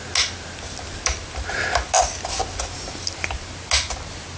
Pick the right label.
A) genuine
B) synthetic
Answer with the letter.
A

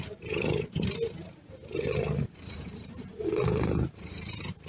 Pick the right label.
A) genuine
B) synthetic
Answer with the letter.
B